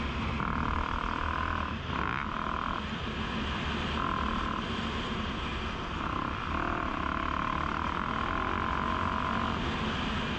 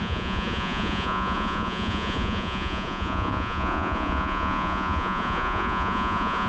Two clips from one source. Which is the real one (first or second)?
first